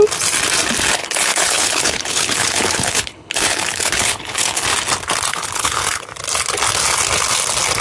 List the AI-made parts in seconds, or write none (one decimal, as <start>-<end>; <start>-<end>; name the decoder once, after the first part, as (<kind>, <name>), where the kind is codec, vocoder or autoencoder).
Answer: 1.0-4.6 (codec, HILCodec); 5.3-6.0

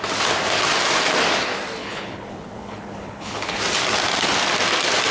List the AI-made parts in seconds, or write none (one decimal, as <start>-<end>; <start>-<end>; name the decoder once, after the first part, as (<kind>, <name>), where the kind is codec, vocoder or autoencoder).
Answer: 1.8-3.6 (codec, HILCodec)

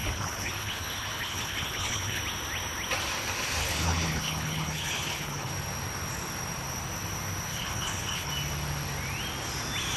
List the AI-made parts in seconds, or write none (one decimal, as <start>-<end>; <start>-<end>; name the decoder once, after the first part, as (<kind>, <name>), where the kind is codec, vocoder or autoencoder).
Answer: 0.0-2.2 (codec, HILCodec); 3.6-5.5; 7.5-8.3

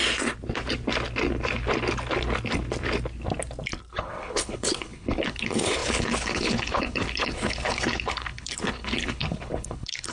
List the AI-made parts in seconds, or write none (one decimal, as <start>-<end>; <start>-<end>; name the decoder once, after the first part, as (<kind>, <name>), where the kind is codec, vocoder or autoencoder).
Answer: 3.9-10.1 (codec, HILCodec)